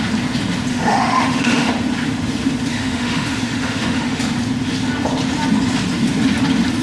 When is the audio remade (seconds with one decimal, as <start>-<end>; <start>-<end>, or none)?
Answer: 0.7-1.7; 2.7-4.2